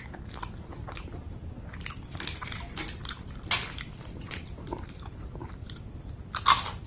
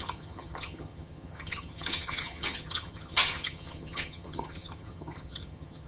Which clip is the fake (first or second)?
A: second